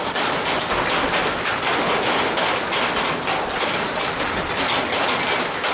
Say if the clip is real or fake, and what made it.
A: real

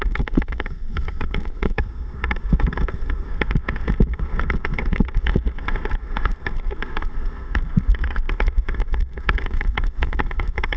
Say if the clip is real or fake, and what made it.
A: fake, codec, SNAC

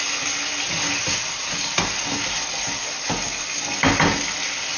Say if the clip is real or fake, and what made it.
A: real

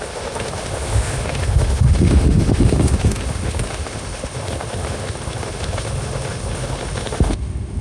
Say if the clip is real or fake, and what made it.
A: fake, autoencoder, DAC-VAE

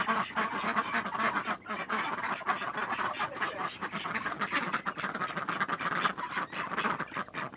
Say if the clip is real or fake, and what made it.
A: real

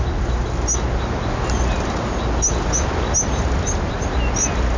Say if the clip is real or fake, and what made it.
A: real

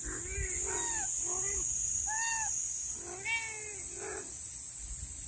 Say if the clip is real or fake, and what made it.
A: real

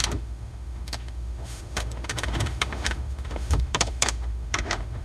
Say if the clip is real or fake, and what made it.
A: fake, autoencoder, DAC-VAE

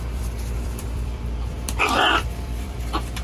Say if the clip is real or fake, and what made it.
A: fake, vocoder, BigVGAN v2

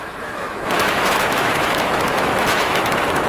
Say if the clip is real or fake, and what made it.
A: fake, autoencoder, DAC-VAE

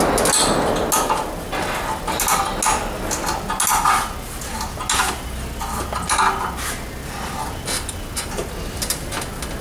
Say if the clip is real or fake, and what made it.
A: real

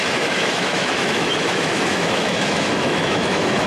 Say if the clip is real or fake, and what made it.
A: fake, autoencoder, DAC-VAE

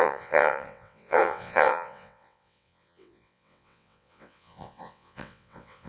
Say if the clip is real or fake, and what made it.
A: fake, vocoder, WaveNeXt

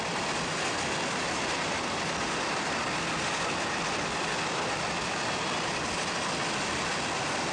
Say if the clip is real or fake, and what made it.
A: real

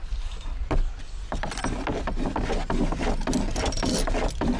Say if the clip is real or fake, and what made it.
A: real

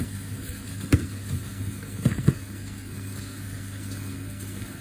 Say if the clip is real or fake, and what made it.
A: fake, codec, SNAC